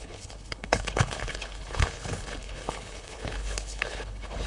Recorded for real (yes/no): no